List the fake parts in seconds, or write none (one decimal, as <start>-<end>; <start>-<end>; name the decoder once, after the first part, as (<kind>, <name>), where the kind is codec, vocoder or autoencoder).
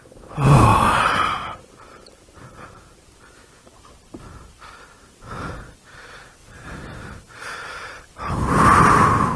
0.7-4.8 (vocoder, BigVGAN v2); 6.4-8.3